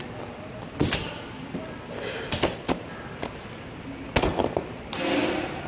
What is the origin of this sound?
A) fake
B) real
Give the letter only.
B